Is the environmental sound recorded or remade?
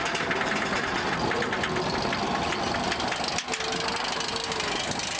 recorded